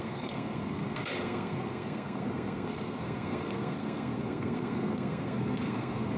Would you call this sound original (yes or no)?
no